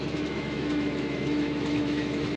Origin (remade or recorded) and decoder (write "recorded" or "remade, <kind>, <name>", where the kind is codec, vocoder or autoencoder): remade, autoencoder, DAC-VAE